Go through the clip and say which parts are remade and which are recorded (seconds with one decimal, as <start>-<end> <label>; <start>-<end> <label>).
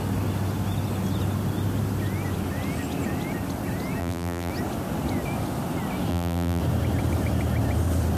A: 0.0-4.0 recorded; 4.0-4.5 remade; 4.5-6.1 recorded; 6.1-6.6 remade; 6.6-8.2 recorded